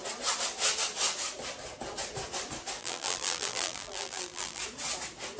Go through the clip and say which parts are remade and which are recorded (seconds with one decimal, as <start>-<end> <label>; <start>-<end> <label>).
0.0-2.8 recorded; 2.8-4.6 remade; 4.6-5.4 recorded